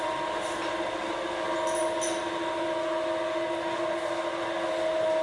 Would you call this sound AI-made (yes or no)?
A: no